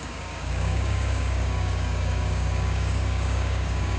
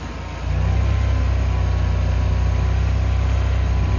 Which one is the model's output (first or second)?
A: first